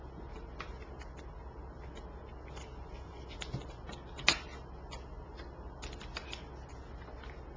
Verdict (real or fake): real